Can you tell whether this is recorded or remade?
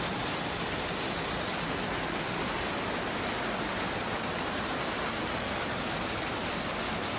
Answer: recorded